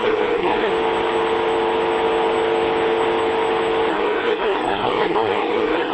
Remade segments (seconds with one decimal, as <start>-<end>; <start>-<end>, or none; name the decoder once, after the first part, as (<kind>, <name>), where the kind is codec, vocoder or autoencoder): 0.0-0.7 (codec, SNAC); 3.9-5.9